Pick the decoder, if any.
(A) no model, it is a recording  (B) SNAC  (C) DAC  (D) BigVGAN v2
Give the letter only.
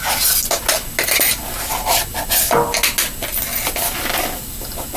A